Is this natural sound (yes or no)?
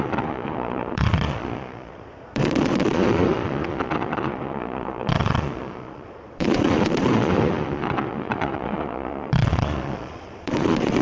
no